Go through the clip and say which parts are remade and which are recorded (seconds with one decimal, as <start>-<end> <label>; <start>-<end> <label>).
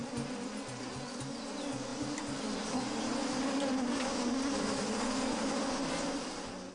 0.0-6.7 recorded